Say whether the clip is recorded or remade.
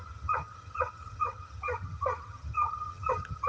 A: remade